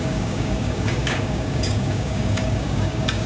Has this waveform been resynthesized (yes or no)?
yes